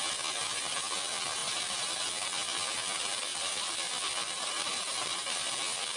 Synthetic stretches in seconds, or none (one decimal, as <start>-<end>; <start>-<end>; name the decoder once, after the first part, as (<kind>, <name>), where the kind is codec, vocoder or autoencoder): 1.4-2.0 (vocoder, BigVGAN v2); 3.3-3.9; 4.3-5.5